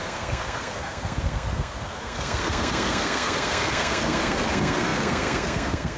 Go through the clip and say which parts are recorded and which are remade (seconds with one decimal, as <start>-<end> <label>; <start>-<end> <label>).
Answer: 0.0-6.0 remade